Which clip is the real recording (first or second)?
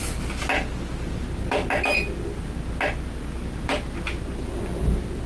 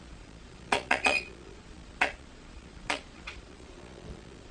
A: first